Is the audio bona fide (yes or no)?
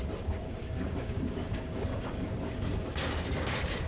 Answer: no